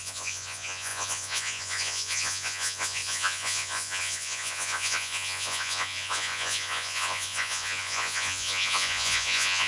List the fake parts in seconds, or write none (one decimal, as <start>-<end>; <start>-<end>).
0.0-9.7